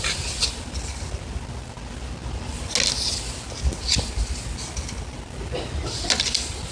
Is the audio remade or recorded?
recorded